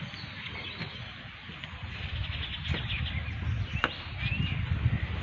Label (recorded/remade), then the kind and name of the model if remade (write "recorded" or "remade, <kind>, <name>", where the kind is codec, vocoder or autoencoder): recorded